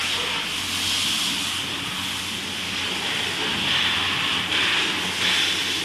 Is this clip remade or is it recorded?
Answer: recorded